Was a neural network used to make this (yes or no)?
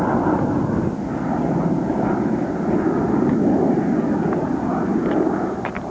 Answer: no